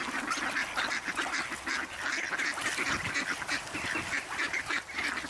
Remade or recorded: recorded